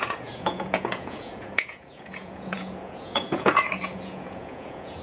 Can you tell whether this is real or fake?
fake